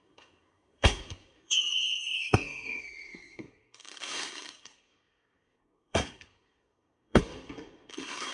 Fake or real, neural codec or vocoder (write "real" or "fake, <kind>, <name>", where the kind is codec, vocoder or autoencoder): fake, codec, SNAC